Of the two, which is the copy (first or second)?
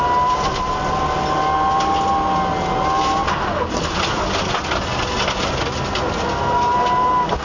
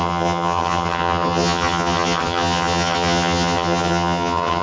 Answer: second